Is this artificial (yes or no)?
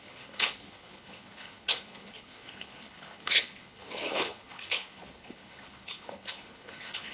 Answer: yes